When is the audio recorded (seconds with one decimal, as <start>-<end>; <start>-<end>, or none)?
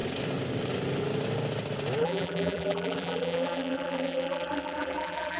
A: 0.0-2.0